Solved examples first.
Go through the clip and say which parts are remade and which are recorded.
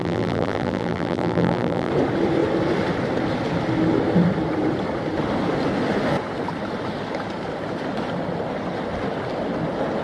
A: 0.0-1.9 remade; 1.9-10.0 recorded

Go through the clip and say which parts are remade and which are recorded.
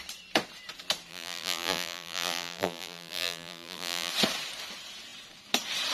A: 0.0-1.1 recorded; 1.1-4.1 remade; 4.1-5.9 recorded